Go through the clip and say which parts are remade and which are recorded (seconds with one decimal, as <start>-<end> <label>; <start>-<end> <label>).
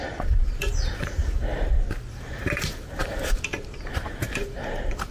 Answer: 0.0-1.2 remade; 1.2-2.1 recorded; 2.1-5.1 remade